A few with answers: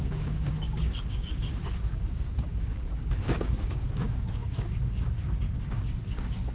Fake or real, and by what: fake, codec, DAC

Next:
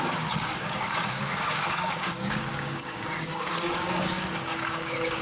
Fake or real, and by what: fake, codec, DAC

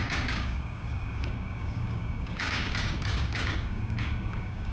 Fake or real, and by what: fake, codec, DAC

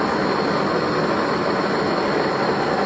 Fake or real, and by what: real